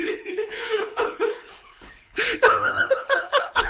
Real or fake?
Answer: fake